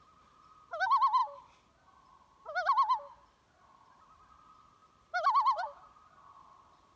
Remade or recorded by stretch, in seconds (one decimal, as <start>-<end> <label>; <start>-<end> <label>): 0.0-7.0 recorded